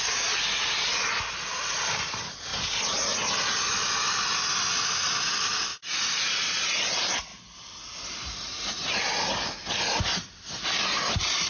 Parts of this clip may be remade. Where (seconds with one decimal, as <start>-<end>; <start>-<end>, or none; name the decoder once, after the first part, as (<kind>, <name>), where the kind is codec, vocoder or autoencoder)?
5.7-6.6 (vocoder, BigVGAN v2); 7.3-8.7